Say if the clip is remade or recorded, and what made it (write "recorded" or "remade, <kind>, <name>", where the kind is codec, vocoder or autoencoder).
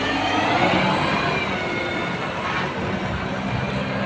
recorded